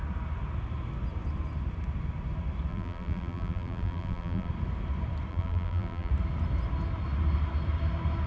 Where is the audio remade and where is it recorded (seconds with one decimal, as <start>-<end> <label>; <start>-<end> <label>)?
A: 0.0-2.7 recorded; 2.7-4.5 remade; 4.5-5.3 recorded; 5.3-6.1 remade; 6.1-8.3 recorded